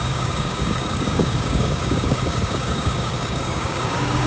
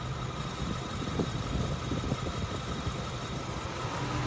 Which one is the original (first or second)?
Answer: second